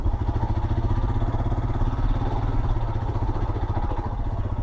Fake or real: real